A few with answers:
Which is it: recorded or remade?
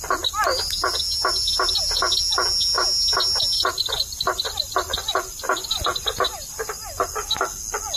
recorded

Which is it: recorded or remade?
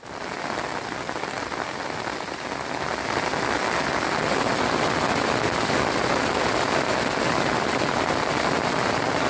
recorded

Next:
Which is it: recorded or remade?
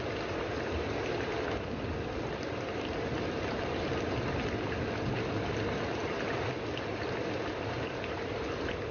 recorded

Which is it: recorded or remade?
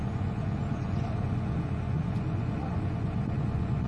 remade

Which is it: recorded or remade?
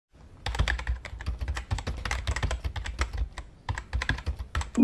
recorded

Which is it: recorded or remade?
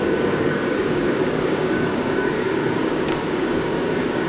remade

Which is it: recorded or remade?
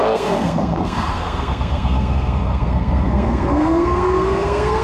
remade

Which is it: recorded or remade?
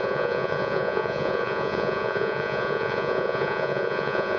remade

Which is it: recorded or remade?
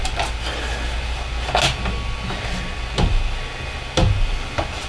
recorded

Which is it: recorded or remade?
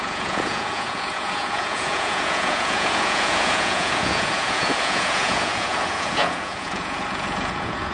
remade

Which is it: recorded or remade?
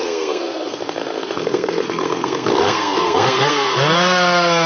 remade